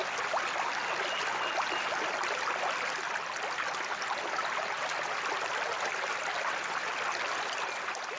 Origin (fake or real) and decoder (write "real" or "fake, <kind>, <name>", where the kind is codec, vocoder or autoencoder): real